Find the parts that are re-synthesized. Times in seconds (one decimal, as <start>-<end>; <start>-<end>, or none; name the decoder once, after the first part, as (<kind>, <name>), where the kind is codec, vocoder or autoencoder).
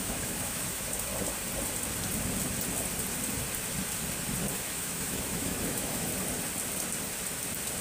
0.0-1.1 (autoencoder, DAC-VAE); 4.5-6.1